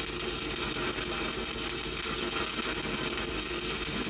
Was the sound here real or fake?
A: real